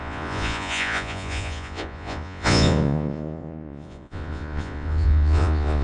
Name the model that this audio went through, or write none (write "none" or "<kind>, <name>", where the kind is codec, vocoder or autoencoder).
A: vocoder, Vocos